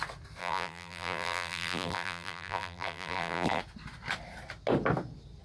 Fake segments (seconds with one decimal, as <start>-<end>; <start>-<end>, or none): 0.4-3.6